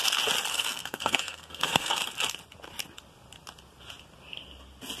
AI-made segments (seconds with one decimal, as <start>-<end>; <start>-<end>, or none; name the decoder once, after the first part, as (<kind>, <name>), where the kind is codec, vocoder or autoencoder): 0.5-2.0 (codec, SNAC)